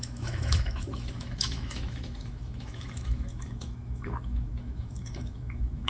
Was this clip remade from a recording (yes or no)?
yes